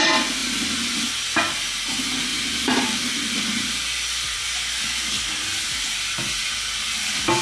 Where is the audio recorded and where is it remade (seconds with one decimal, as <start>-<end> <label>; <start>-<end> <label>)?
0.0-2.3 recorded; 2.3-3.0 remade; 3.0-7.4 recorded